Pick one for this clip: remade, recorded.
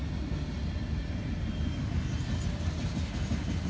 recorded